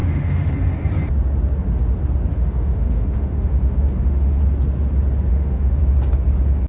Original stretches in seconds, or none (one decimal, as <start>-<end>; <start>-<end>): 0.5-2.3; 4.4-5.3; 5.8-6.7

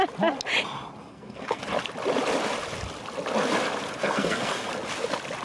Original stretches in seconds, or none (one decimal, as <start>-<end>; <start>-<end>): 0.0-1.1; 1.6-4.0; 4.7-5.4

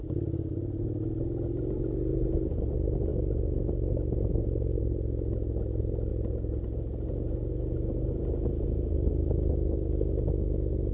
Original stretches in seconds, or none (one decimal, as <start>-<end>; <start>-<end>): 0.0-2.1; 2.7-3.1; 4.8-6.1; 9.1-10.9

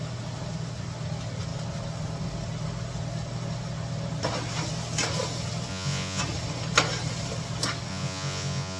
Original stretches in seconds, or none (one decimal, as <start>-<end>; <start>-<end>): 0.0-5.7; 6.2-7.9